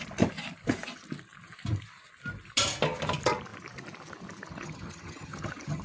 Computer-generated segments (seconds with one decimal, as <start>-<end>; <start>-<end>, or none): 4.5-5.8